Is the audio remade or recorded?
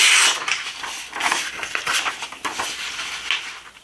recorded